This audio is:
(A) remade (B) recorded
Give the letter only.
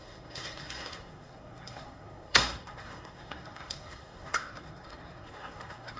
A